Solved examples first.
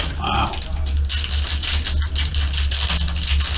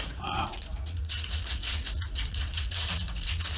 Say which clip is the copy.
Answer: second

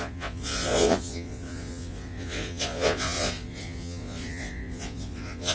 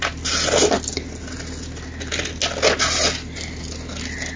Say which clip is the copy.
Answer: first